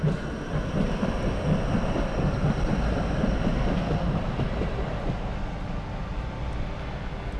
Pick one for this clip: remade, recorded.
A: recorded